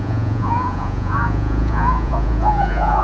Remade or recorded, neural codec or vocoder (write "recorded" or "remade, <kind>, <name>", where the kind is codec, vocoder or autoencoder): remade, vocoder, Vocos